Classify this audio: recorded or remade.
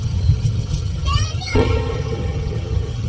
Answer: remade